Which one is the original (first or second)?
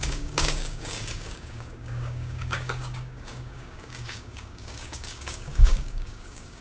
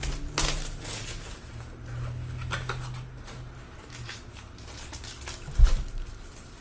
second